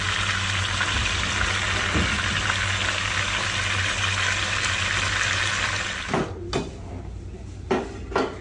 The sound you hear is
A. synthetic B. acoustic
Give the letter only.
B